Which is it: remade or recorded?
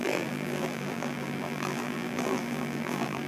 remade